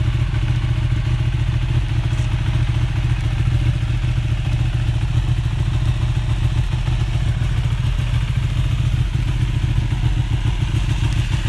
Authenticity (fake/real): real